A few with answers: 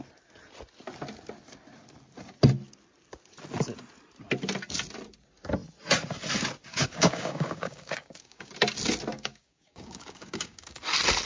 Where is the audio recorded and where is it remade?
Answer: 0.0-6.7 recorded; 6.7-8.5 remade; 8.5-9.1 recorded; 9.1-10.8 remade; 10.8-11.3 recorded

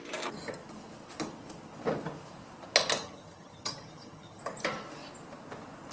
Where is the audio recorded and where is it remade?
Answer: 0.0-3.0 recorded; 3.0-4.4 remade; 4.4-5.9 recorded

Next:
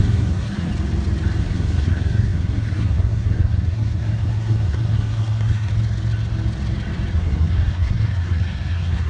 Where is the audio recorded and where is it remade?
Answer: 0.0-0.7 remade; 0.7-1.4 recorded; 1.4-5.7 remade; 5.7-7.2 recorded; 7.2-9.1 remade

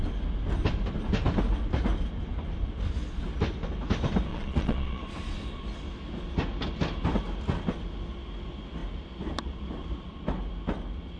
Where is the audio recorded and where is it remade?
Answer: 0.0-4.3 recorded; 4.3-5.0 remade; 5.0-11.2 recorded

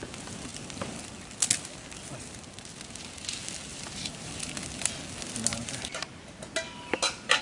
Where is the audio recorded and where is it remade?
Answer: 0.0-3.7 recorded; 3.7-4.3 remade; 4.3-5.5 recorded; 5.5-6.4 remade; 6.4-7.4 recorded

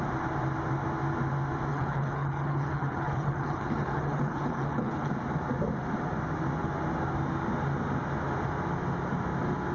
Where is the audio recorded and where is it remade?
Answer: 0.0-1.7 recorded; 1.7-5.1 remade; 5.1-9.7 recorded